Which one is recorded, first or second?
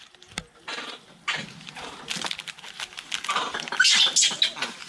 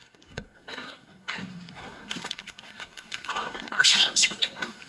first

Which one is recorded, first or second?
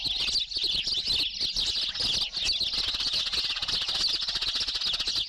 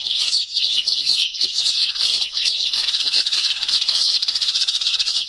first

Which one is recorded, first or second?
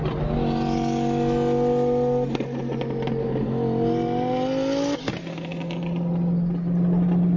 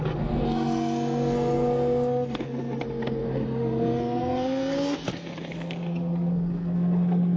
first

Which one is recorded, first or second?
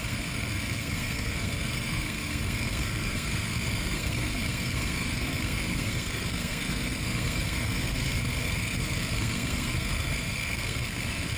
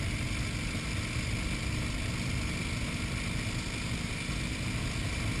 second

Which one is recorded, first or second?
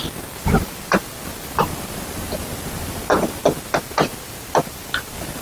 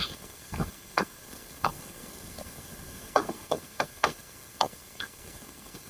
first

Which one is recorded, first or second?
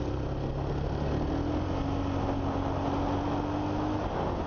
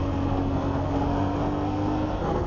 first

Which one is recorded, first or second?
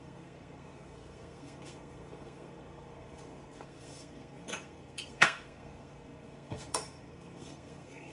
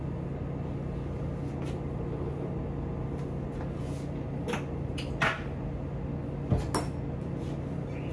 second